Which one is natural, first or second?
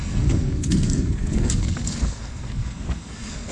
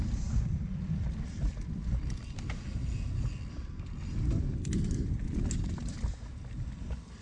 second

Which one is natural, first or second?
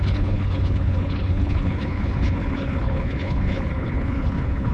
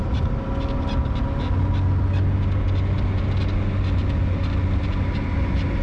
second